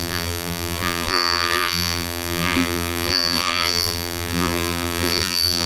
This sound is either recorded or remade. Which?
remade